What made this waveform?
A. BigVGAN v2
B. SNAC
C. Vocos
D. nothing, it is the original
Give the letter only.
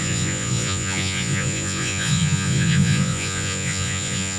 C